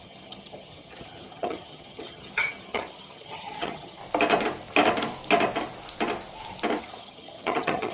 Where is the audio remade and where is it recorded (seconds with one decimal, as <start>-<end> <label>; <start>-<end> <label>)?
0.0-4.0 remade; 4.0-6.8 recorded; 6.8-7.9 remade